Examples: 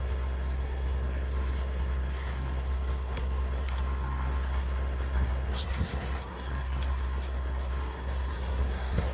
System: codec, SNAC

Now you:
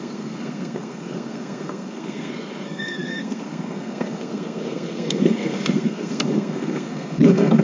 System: codec, SNAC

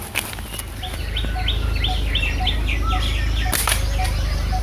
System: none